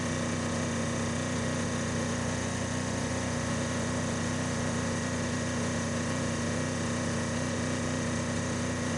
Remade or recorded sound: remade